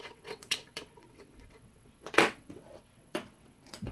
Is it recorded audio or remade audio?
remade